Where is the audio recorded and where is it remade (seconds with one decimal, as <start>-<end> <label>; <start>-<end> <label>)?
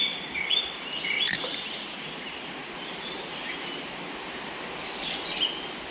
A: 0.0-0.7 remade; 0.7-5.9 recorded